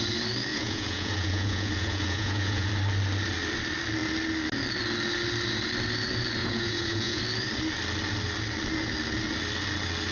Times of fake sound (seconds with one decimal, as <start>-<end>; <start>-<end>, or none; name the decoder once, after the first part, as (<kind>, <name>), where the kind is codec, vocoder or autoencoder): 0.5-2.7 (vocoder, Vocos); 6.4-7.2

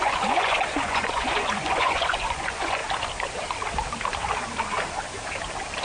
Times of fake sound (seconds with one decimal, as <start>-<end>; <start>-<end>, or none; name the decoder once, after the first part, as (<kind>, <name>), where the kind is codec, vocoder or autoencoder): 0.0-2.8 (vocoder, Vocos)